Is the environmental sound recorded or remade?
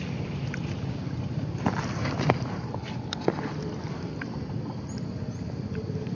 recorded